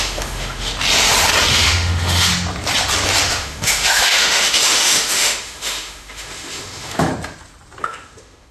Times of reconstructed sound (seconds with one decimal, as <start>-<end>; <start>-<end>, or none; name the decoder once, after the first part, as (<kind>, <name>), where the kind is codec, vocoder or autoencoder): 0.0-0.7 (autoencoder, DAC-VAE); 1.5-2.3; 3.2-7.1; 7.8-8.5